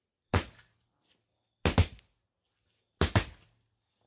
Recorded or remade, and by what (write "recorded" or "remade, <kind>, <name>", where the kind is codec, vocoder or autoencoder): recorded